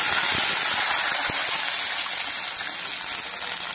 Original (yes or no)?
yes